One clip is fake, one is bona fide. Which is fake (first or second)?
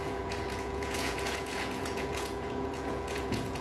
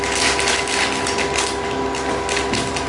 first